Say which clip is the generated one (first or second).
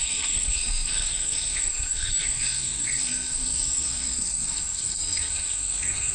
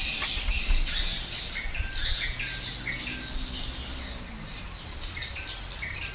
first